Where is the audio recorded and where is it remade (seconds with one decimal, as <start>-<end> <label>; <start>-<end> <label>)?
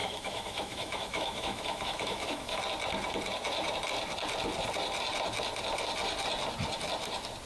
0.0-2.6 remade; 2.6-7.5 recorded